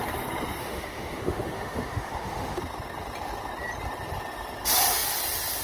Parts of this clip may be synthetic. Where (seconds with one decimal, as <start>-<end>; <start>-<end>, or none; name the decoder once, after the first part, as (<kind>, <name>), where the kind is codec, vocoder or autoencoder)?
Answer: 0.6-2.6 (autoencoder, DAC-VAE)